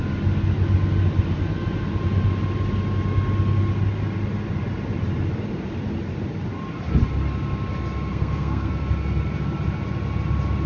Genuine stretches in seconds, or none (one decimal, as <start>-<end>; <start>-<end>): 0.0-8.1; 8.7-10.7